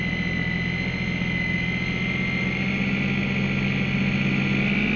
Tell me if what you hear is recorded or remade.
recorded